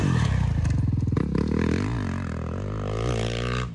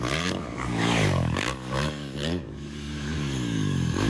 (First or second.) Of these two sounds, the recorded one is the first